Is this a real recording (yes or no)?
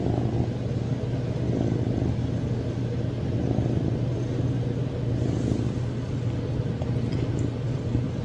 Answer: yes